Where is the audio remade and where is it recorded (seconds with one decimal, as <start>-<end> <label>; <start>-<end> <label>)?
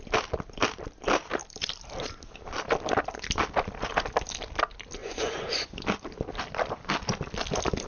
0.0-5.0 recorded; 5.0-5.8 remade; 5.8-7.9 recorded